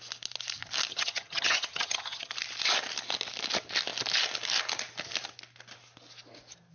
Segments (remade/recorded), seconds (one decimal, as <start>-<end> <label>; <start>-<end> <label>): 0.0-0.9 recorded; 0.9-2.3 remade; 2.3-6.7 recorded